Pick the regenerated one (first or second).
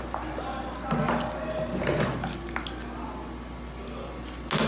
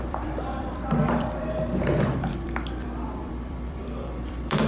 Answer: second